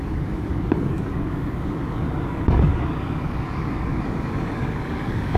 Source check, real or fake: fake